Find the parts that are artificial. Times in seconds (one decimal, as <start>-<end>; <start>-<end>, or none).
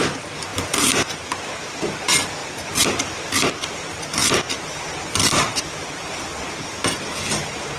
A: none